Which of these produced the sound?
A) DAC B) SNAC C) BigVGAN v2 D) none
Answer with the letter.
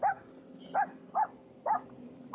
D